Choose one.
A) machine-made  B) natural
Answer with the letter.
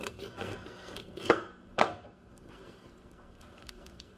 A